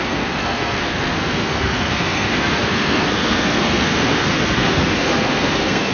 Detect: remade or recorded remade